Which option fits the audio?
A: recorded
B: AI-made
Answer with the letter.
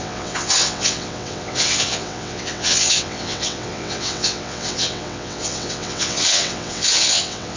B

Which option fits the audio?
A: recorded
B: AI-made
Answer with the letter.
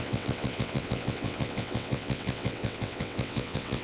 B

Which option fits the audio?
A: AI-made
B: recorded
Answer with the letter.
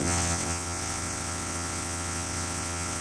A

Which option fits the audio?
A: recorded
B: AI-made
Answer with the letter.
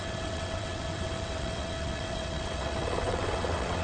B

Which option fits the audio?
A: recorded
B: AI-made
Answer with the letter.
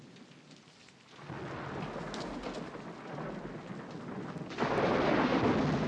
A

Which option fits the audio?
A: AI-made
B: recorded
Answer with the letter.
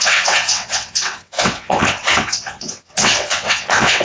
A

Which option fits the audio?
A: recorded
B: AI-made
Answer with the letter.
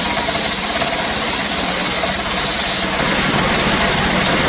A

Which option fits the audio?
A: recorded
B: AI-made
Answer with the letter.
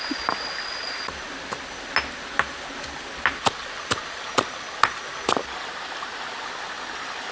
A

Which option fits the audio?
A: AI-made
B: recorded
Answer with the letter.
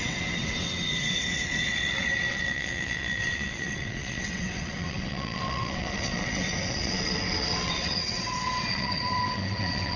A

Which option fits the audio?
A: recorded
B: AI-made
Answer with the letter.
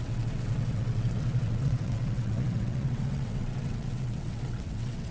B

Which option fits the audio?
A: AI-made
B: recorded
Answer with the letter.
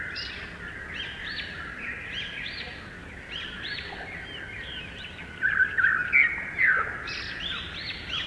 B